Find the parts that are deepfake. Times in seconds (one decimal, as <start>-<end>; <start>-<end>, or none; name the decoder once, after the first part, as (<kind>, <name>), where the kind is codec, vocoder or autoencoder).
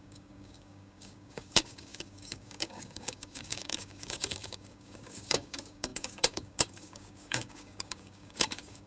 0.0-8.9 (codec, DAC)